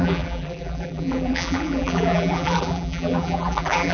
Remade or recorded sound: remade